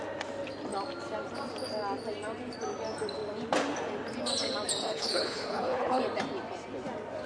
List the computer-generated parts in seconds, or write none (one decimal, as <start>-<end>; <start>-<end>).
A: 4.8-6.0